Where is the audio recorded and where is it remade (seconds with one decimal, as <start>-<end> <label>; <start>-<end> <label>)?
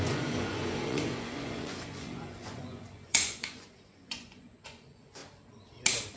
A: 0.0-5.2 remade; 5.2-6.2 recorded